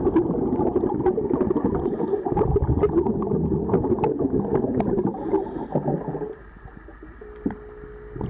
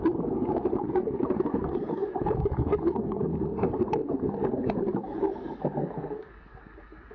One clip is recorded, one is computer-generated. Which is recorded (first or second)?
first